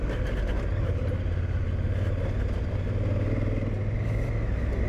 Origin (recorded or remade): recorded